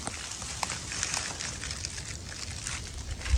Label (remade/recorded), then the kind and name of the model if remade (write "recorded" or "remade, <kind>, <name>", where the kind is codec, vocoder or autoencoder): remade, vocoder, BigVGAN v2